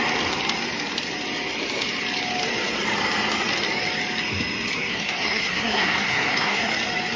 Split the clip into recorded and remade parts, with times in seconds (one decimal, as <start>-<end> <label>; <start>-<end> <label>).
0.0-4.9 recorded; 4.9-6.7 remade; 6.7-7.2 recorded